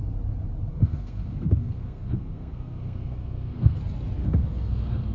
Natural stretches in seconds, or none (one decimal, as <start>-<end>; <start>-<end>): 0.0-0.7; 3.8-4.2